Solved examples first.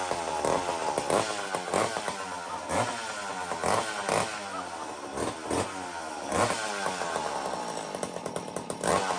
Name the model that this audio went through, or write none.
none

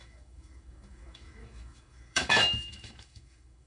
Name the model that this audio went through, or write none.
autoencoder, DAC-VAE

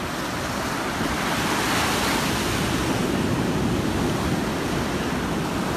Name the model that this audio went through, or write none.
none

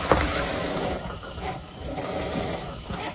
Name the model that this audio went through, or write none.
autoencoder, DAC-VAE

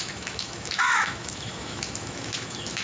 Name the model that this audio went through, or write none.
autoencoder, DAC-VAE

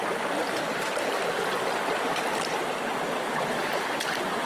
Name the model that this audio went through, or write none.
none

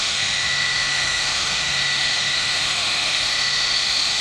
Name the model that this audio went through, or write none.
autoencoder, DAC-VAE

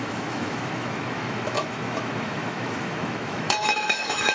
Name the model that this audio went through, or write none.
autoencoder, DAC-VAE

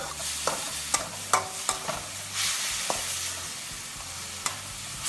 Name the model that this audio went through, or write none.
none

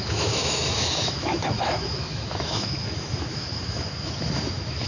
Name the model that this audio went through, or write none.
autoencoder, DAC-VAE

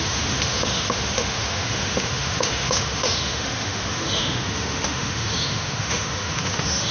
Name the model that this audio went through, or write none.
autoencoder, DAC-VAE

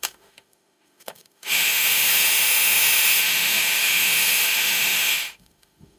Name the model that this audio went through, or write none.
autoencoder, DAC-VAE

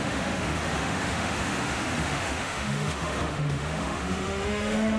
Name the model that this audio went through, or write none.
autoencoder, DAC-VAE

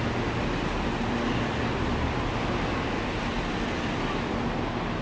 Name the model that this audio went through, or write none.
none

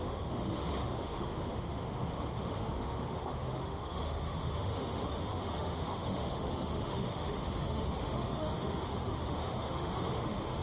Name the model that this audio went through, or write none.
autoencoder, DAC-VAE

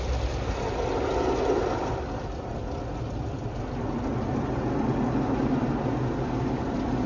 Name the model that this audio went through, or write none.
none